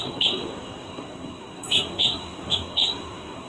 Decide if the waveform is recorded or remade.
remade